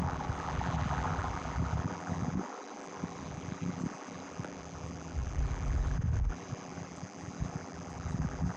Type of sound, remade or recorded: remade